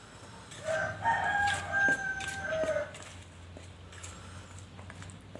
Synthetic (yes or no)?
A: no